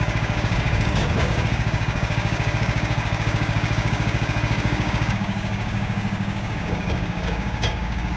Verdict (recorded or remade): remade